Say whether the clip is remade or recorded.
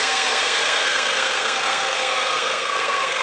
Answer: remade